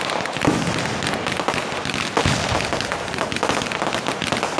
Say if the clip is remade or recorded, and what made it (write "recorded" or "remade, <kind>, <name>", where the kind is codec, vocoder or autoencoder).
recorded